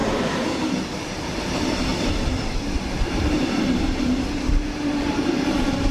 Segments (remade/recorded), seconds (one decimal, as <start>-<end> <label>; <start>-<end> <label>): 0.0-1.9 remade; 1.9-3.2 recorded; 3.2-5.9 remade